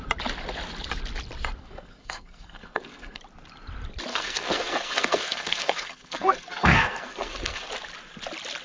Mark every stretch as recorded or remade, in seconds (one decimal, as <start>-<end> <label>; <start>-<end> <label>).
0.0-1.6 recorded; 1.6-3.2 remade; 3.2-4.1 recorded; 4.1-7.7 remade; 7.7-8.6 recorded